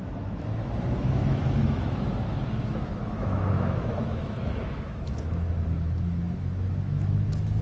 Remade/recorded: remade